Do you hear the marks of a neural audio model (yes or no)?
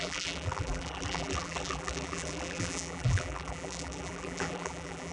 yes